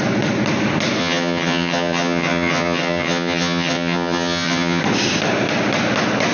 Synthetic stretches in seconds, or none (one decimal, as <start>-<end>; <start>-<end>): 1.0-4.8